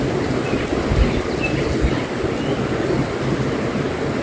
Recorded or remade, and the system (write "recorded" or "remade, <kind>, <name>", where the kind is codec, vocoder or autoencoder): recorded